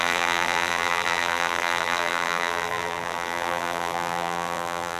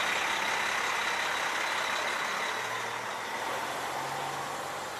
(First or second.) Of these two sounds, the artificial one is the first